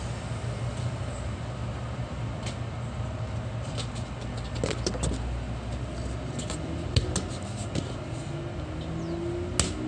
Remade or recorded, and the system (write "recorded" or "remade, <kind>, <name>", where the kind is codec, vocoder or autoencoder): recorded